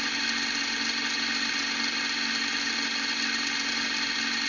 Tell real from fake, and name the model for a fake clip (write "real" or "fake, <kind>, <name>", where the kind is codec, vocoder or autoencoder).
real